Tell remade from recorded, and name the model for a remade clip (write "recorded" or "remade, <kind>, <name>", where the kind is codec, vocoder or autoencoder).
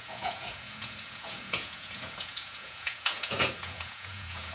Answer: remade, vocoder, Vocos